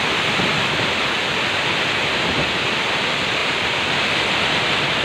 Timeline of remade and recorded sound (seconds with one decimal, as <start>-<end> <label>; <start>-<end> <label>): 0.0-5.0 recorded